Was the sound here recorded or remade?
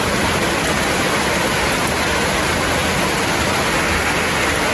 recorded